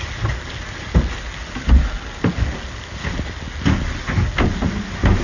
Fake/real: real